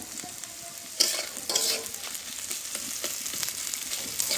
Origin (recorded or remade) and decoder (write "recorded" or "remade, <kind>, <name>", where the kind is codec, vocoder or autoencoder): recorded